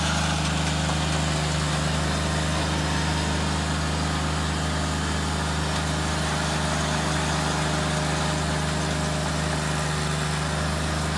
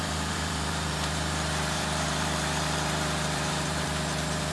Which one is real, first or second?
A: first